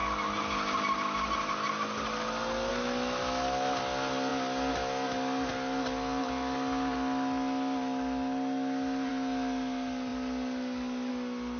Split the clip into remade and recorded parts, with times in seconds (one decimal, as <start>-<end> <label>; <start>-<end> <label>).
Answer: 0.0-11.6 recorded